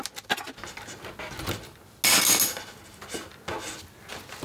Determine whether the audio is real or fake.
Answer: real